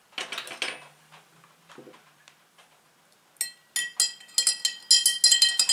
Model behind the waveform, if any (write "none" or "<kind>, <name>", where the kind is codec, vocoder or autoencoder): none